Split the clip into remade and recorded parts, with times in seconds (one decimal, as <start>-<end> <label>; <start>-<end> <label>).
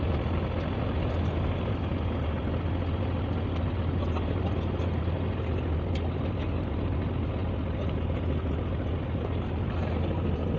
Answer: 0.0-10.6 recorded